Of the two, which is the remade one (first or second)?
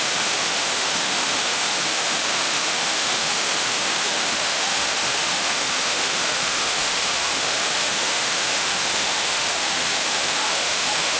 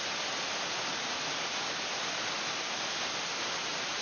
first